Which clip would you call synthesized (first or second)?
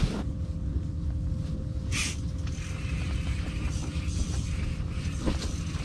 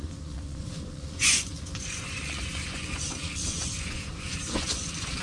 second